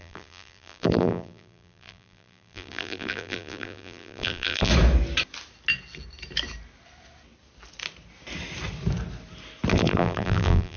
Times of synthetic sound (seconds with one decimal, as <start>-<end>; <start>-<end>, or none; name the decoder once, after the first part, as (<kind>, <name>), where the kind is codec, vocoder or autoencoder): 0.0-4.7 (vocoder, BigVGAN v2); 9.7-10.8